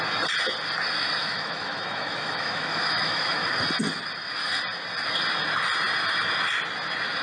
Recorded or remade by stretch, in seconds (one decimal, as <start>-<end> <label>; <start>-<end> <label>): 0.0-1.2 recorded; 1.2-3.5 remade; 3.5-7.2 recorded